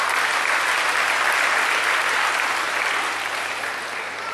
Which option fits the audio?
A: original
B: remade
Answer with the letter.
A